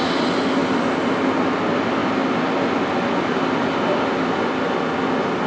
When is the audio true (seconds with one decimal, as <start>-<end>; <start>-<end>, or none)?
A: 0.0-5.5